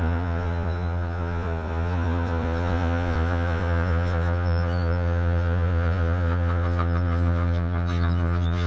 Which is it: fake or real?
fake